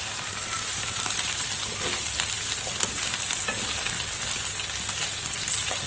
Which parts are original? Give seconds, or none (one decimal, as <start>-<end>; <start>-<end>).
1.6-4.9